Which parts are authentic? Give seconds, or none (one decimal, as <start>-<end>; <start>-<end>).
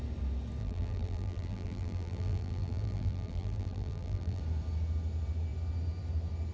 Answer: 0.0-0.6; 4.4-6.5